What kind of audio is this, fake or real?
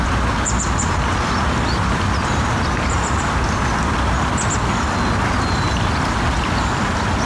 real